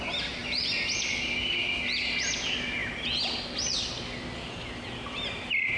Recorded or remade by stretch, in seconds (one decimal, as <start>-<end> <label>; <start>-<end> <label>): 0.0-5.8 recorded